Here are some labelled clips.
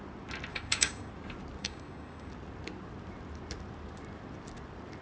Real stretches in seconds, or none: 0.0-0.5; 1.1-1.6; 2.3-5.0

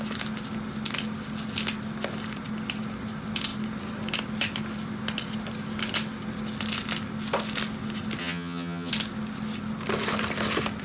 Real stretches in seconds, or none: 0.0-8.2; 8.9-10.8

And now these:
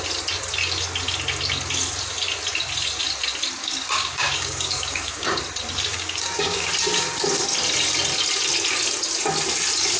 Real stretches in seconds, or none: 0.0-3.6; 5.4-5.9; 6.7-10.0

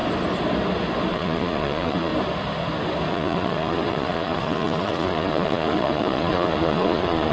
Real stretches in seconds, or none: 0.0-1.1; 2.1-3.1

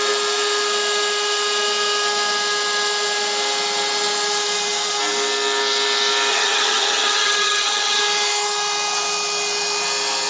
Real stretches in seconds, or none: 0.0-6.3; 8.0-10.3

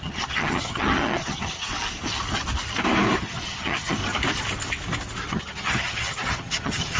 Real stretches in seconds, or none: 1.7-3.2; 4.0-5.3

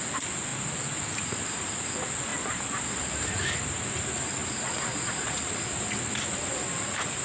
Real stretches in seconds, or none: 0.0-7.2